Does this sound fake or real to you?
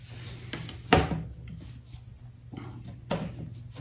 real